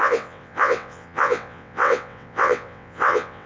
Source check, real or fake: fake